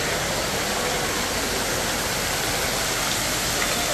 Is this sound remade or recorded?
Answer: recorded